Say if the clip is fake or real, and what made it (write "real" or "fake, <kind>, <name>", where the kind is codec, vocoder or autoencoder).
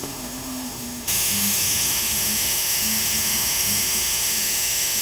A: fake, autoencoder, DAC-VAE